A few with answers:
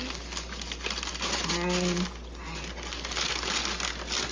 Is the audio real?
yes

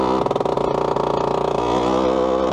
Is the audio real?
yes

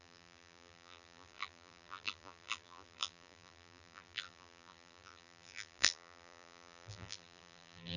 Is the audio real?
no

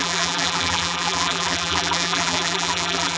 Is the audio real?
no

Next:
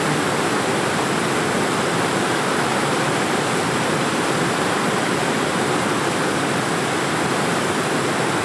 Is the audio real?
yes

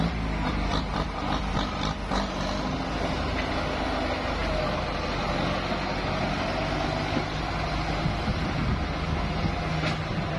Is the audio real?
yes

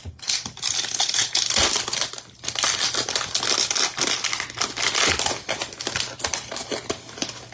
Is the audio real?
yes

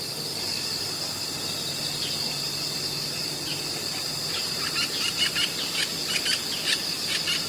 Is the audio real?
yes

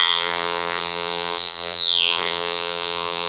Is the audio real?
no